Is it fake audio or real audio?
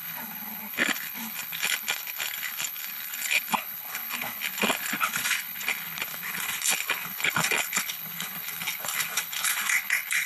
fake